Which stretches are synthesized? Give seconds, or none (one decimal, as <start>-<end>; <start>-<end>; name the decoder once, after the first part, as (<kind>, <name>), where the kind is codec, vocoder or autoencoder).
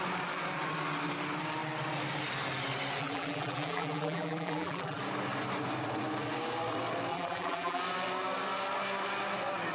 3.0-5.0 (vocoder, BigVGAN v2); 7.1-7.8